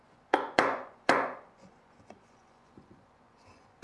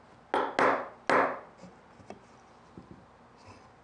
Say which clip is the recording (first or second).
second